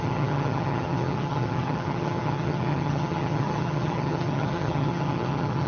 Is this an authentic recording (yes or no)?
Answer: no